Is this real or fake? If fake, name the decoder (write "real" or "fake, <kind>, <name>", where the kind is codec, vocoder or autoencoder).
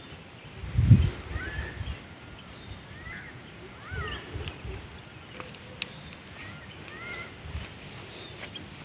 real